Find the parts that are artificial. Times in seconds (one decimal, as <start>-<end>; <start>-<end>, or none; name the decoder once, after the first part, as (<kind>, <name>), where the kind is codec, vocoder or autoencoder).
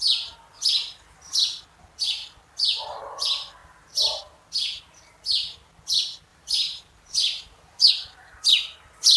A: 6.3-7.9 (vocoder, BigVGAN v2)